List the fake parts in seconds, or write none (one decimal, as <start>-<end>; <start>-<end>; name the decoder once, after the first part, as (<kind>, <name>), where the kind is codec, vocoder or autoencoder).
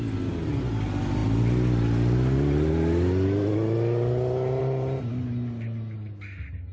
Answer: none